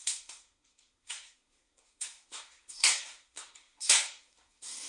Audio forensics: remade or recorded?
remade